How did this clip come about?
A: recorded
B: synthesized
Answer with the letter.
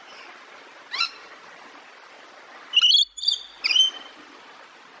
A